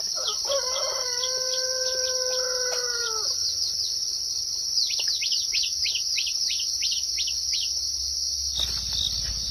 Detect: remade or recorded remade